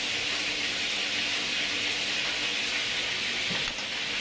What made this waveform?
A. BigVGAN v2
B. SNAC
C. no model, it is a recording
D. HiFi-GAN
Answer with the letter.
C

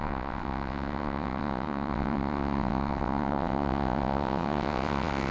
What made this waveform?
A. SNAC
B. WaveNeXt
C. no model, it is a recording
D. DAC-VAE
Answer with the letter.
B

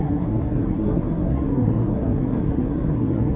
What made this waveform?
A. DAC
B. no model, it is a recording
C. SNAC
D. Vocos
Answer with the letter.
C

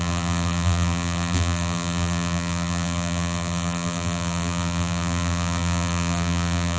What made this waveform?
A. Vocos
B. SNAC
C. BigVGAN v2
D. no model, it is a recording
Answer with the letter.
C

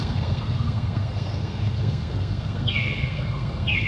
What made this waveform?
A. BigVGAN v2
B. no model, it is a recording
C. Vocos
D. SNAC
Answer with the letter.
D